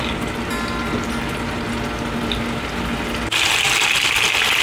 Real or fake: real